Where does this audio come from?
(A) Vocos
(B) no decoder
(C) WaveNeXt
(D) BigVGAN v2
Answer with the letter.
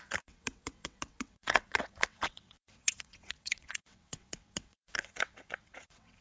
C